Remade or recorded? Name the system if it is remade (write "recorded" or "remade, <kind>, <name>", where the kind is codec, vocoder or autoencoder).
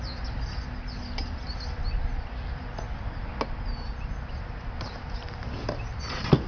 recorded